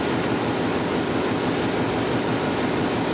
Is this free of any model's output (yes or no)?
yes